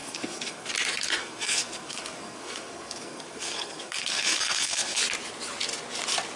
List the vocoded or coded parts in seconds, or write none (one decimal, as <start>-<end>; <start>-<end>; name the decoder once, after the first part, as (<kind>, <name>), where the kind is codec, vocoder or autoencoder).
0.0-0.7 (codec, SNAC); 1.2-5.0